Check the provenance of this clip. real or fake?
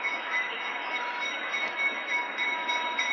fake